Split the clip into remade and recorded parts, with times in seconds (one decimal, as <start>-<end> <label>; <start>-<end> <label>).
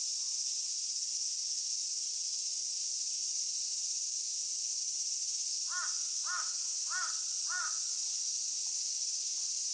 0.0-9.7 recorded